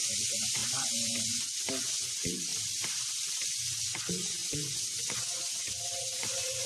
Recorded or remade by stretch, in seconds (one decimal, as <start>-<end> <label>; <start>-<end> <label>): 0.0-2.5 remade; 2.5-3.5 recorded; 3.5-6.7 remade